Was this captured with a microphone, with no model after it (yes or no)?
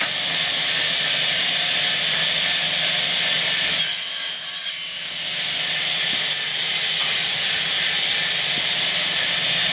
yes